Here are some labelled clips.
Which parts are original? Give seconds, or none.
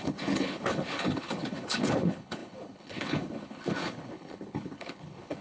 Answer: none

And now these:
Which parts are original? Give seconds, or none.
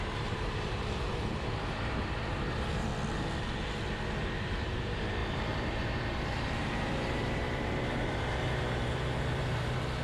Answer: 2.9-4.2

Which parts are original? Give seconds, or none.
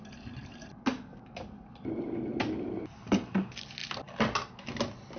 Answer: 0.0-5.2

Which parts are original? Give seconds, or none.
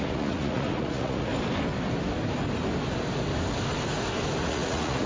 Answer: 1.3-4.4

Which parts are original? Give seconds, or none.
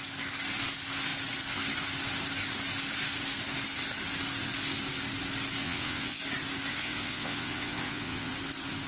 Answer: 0.0-5.6; 6.2-6.7; 8.3-8.9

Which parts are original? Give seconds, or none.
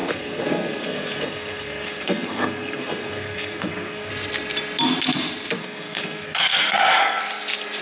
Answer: 4.1-5.6; 7.2-7.8